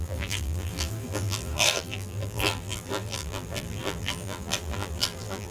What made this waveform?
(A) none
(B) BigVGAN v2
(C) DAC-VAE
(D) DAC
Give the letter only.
B